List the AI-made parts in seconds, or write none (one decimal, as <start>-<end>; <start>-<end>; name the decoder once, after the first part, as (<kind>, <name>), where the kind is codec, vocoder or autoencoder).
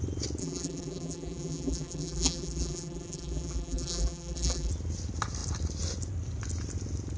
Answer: 0.4-4.7 (vocoder, BigVGAN v2)